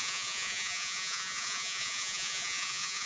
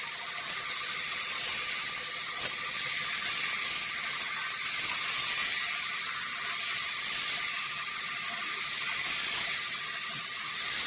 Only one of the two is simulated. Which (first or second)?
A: first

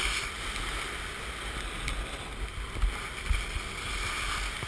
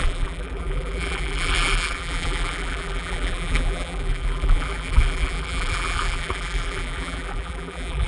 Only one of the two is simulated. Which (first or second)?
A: second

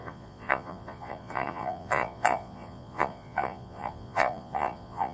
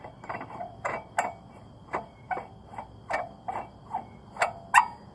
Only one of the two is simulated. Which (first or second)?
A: first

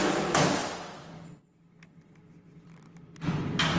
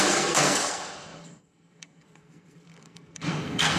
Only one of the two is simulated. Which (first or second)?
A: second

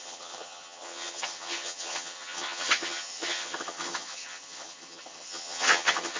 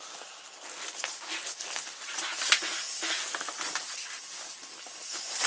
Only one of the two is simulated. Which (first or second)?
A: first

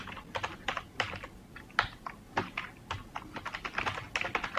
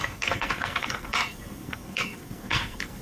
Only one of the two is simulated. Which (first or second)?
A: second